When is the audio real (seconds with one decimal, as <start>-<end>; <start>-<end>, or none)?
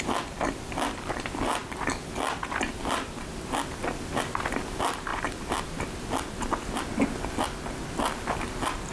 0.0-8.9